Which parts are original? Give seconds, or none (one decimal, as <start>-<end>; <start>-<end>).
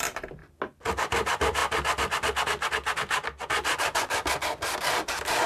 0.4-0.9; 1.6-4.9